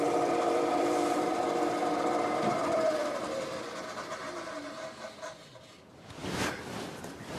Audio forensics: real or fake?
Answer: fake